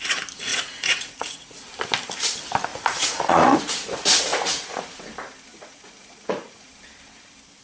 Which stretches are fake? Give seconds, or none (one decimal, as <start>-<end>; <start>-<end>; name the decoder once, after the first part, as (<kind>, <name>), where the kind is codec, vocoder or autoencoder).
0.5-1.6 (vocoder, Vocos); 2.7-3.6; 4.3-4.8; 5.5-6.7